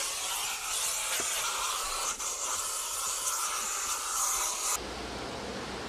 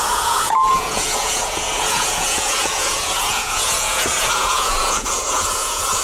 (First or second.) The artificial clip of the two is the second